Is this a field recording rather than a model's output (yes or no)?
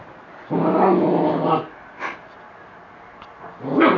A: yes